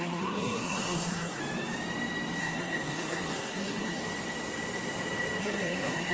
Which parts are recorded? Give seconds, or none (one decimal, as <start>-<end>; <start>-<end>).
1.4-2.4; 4.0-5.4

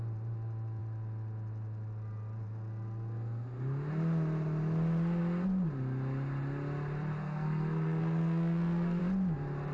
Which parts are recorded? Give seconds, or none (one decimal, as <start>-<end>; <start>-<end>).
0.0-7.2; 9.0-9.7

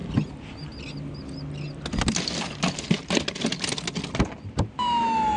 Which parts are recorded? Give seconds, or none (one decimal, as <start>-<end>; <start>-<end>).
0.0-5.4